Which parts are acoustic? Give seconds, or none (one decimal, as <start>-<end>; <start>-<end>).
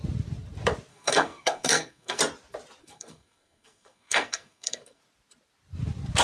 0.0-0.9; 2.2-2.8; 5.0-6.2